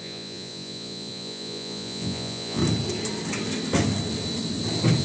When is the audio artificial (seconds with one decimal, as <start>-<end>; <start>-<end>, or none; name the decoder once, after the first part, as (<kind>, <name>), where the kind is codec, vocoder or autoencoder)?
0.0-2.6 (vocoder, Vocos)